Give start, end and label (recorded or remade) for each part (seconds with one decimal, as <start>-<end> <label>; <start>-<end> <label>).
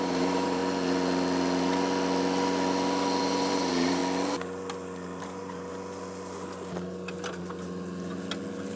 0.0-0.6 remade; 0.6-3.2 recorded; 3.2-4.0 remade; 4.0-5.2 recorded; 5.2-5.7 remade; 5.7-8.8 recorded